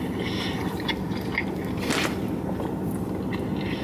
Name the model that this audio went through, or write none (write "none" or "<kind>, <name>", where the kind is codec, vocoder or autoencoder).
none